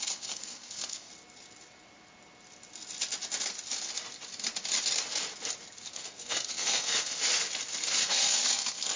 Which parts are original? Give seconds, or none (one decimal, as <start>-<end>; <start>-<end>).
1.1-5.9; 7.3-8.0